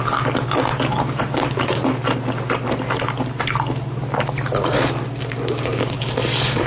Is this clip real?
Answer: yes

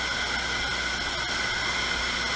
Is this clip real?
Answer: yes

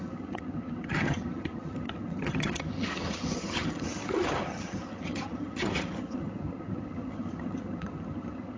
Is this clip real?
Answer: no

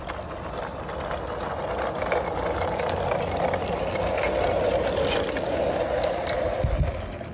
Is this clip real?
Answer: yes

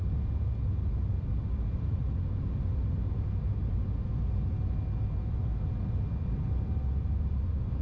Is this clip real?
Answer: yes